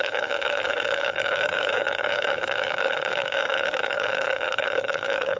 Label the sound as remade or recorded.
remade